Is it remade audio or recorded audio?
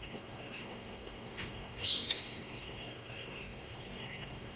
remade